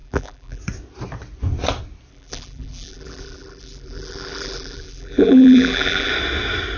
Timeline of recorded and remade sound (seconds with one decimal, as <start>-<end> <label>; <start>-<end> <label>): 0.0-0.6 remade; 0.6-2.1 recorded; 2.1-6.1 remade; 6.1-6.8 recorded